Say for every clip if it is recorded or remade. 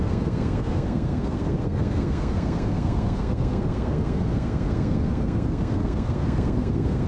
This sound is remade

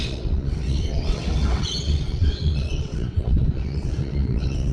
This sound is remade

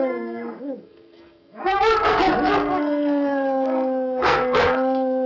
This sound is remade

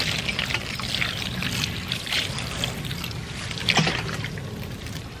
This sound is recorded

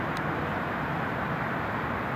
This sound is remade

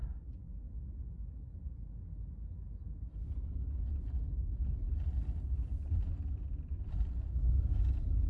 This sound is recorded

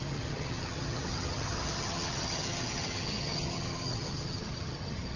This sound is remade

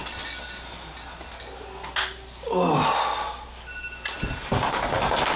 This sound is recorded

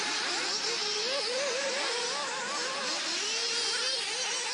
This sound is recorded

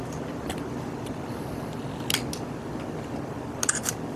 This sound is remade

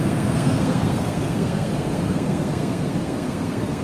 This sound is remade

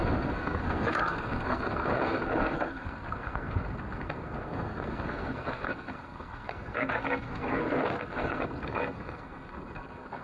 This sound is remade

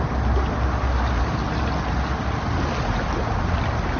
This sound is recorded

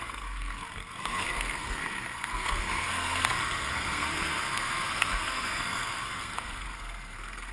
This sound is remade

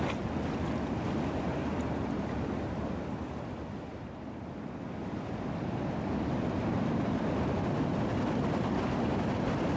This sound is recorded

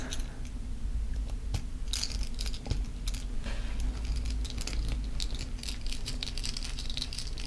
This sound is recorded